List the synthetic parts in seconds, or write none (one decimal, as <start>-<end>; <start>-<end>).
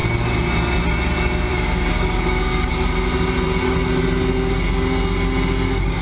1.5-2.7